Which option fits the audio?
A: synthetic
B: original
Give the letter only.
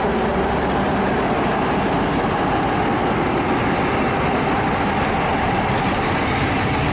B